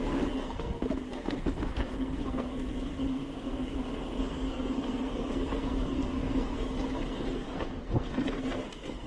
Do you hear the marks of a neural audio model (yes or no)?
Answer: yes